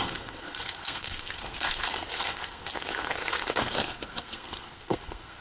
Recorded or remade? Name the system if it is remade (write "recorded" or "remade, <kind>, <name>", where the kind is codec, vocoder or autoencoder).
remade, codec, SNAC